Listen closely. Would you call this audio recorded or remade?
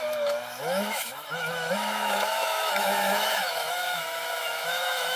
remade